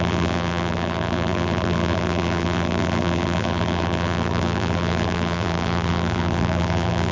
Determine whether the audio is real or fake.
fake